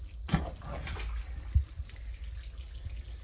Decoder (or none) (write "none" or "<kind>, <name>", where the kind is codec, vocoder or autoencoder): none